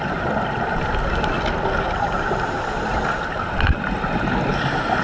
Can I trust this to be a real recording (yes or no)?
yes